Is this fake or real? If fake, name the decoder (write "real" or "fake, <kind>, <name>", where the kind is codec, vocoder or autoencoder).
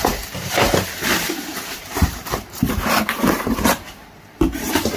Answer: fake, vocoder, BigVGAN v2